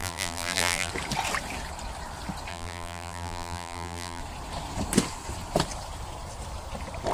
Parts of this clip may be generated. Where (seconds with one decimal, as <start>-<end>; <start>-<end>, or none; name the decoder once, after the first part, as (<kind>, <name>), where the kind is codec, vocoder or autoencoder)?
0.0-0.9 (vocoder, BigVGAN v2); 2.5-4.2